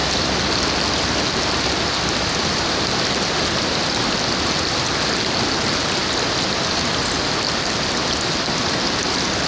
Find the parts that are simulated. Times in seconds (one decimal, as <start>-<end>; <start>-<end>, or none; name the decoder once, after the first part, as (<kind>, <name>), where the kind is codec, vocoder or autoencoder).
none